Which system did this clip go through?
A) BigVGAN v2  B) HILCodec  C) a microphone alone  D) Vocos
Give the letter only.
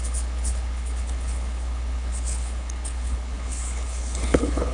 B